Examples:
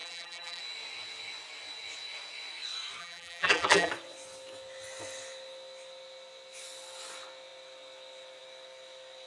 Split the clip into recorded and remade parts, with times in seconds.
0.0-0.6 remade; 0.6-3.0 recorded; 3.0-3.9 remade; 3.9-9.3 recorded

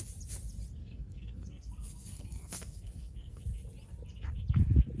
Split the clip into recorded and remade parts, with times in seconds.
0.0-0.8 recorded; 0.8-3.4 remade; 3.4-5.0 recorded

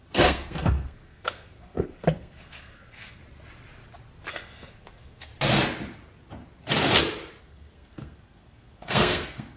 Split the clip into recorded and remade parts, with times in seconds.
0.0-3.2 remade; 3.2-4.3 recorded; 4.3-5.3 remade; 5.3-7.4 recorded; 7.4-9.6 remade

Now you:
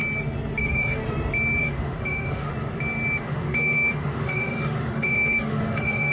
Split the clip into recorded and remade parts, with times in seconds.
0.0-0.6 recorded; 0.6-1.0 remade; 1.0-1.6 recorded; 1.6-2.5 remade; 2.5-3.2 recorded; 3.2-6.1 remade

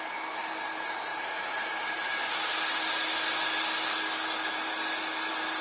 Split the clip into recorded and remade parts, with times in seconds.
0.0-5.6 recorded